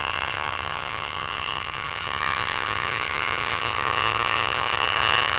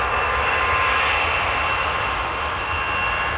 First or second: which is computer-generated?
first